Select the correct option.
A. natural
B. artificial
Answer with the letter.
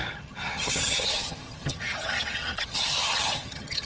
B